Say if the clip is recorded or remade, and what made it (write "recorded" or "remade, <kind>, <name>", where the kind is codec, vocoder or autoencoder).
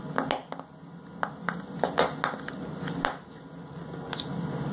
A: recorded